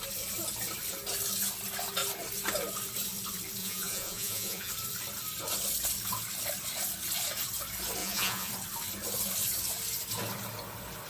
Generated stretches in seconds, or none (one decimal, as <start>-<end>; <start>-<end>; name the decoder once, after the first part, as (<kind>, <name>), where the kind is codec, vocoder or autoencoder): 3.6-4.7 (vocoder, Vocos); 8.0-8.5